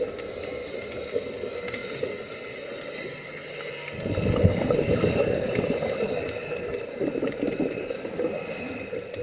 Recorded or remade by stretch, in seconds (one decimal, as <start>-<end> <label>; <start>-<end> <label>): 0.0-9.2 recorded